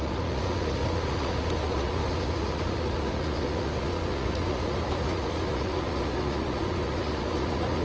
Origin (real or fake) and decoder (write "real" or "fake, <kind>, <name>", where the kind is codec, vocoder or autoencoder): fake, vocoder, Vocos